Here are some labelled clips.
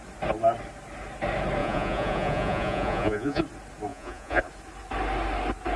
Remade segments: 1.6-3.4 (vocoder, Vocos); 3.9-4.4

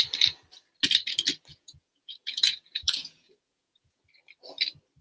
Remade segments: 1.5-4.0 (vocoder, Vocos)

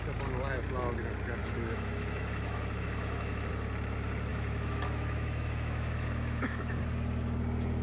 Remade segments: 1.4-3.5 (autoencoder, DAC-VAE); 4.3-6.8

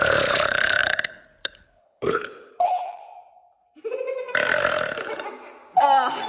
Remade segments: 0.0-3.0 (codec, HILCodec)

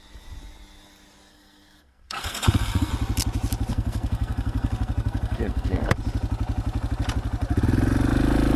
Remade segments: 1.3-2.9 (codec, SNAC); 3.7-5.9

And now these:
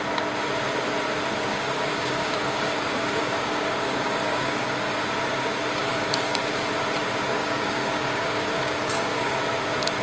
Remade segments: 1.5-5.0 (codec, DAC); 5.8-6.4; 7.4-9.4